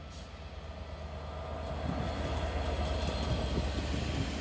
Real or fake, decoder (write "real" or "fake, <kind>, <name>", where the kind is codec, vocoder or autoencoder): real